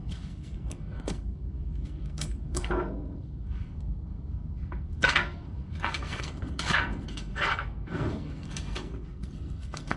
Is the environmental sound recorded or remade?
remade